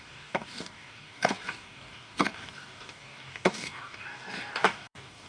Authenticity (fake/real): fake